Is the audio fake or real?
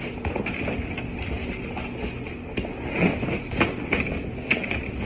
real